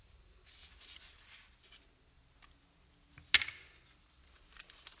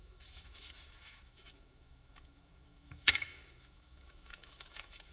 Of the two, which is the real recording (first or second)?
first